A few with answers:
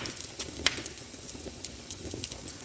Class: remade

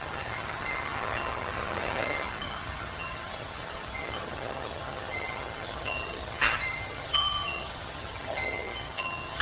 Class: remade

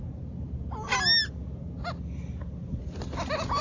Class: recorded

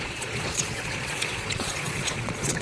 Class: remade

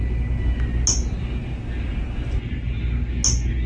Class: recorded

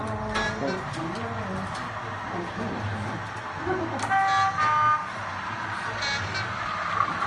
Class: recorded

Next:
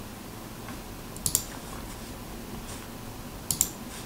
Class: recorded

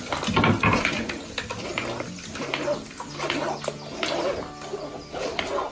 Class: recorded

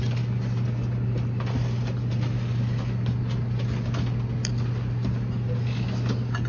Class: recorded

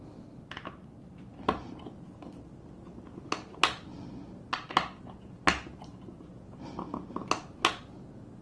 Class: recorded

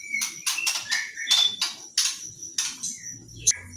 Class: recorded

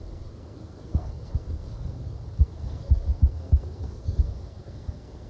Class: remade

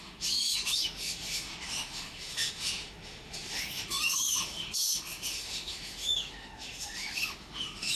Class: remade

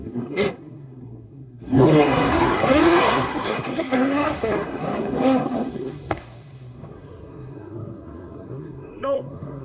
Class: remade